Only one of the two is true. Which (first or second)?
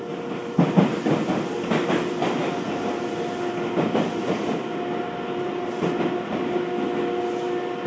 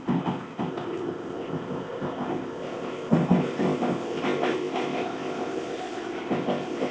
first